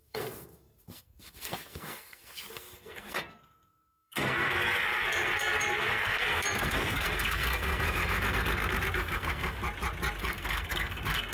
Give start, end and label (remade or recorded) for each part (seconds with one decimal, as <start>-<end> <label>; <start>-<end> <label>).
0.0-9.6 remade; 9.6-10.2 recorded; 10.2-11.3 remade

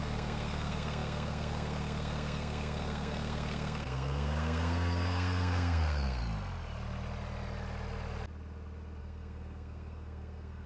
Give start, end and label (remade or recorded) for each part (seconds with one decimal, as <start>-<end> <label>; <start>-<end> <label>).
0.0-6.2 remade; 6.2-9.0 recorded; 9.0-10.7 remade

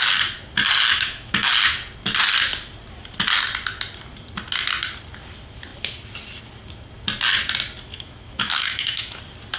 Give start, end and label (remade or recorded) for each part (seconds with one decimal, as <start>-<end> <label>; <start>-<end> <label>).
0.0-0.9 recorded; 0.9-1.5 remade; 1.5-7.9 recorded; 7.9-9.2 remade; 9.2-9.6 recorded